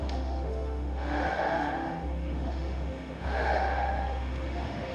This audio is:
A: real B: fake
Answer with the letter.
B